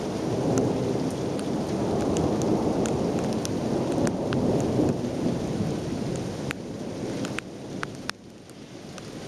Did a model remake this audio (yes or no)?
no